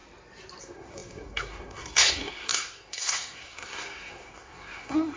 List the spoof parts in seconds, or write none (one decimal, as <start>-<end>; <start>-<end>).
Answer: 0.6-5.2